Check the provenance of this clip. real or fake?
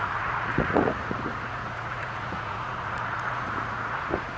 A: fake